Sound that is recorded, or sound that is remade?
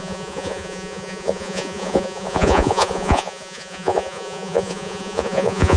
remade